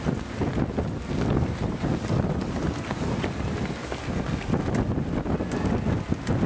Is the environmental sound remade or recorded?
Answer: recorded